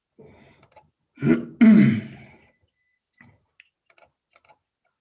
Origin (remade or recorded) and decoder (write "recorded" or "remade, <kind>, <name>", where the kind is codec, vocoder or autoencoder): recorded